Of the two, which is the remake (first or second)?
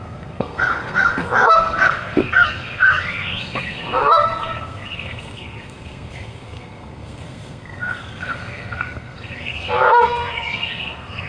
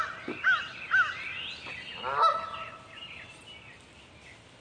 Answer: first